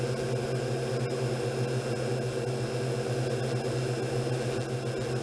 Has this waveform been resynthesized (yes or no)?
no